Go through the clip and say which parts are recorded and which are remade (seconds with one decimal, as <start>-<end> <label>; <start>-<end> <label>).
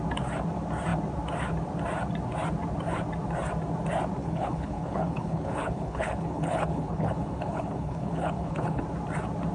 0.0-4.2 recorded; 4.2-8.8 remade; 8.8-9.5 recorded